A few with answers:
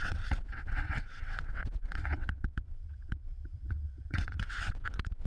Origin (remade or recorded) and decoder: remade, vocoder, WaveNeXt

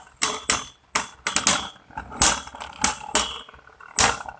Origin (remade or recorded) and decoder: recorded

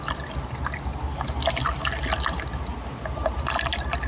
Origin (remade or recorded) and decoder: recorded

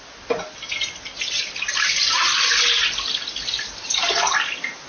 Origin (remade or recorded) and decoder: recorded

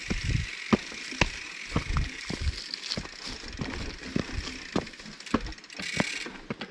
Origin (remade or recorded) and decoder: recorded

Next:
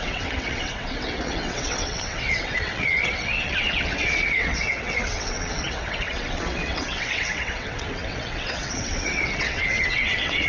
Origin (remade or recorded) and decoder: remade, vocoder, WaveNeXt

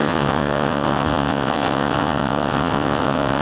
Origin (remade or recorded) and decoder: remade, vocoder, WaveNeXt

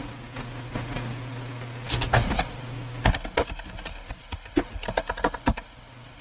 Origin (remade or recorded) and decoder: recorded